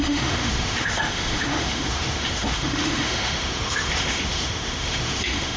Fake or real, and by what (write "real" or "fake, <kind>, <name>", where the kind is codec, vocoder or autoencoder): fake, autoencoder, DAC-VAE